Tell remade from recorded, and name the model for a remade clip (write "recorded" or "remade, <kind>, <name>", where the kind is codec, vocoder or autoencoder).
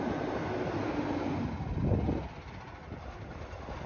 recorded